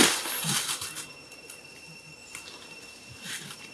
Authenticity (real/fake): real